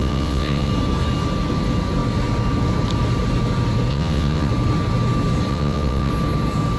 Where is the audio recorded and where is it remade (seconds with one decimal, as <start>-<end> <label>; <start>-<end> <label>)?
0.0-0.7 remade; 0.7-3.9 recorded; 3.9-4.5 remade; 4.5-5.5 recorded; 5.5-6.1 remade; 6.1-6.8 recorded